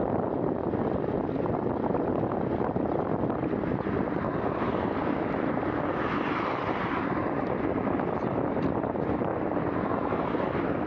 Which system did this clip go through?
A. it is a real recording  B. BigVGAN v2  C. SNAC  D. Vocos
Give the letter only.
A